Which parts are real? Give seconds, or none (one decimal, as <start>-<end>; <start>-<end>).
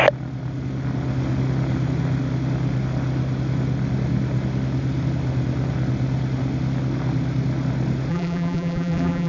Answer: 0.0-8.1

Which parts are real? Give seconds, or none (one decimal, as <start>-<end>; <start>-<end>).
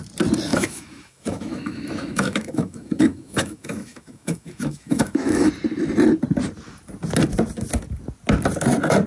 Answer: 0.0-0.5; 5.5-9.1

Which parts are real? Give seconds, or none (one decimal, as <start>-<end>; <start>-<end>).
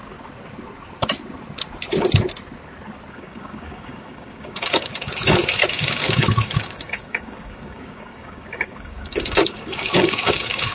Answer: 0.0-3.1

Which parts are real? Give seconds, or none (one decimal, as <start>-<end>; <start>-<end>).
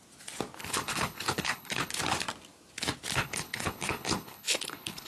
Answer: 0.0-0.6; 1.9-3.2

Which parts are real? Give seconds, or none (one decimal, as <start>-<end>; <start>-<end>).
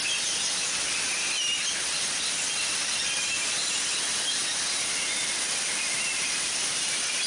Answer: 0.0-7.3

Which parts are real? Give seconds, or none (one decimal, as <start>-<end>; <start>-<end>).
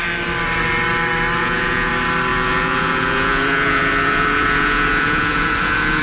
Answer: 0.0-1.4; 1.9-2.3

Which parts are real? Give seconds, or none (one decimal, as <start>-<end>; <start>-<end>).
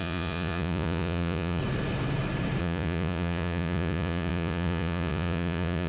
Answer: 1.6-2.6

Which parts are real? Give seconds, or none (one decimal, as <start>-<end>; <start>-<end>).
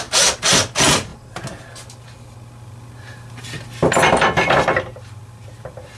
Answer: 0.0-6.0